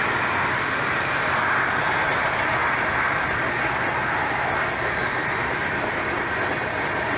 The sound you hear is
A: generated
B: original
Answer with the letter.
B